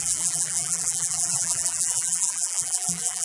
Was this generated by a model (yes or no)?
yes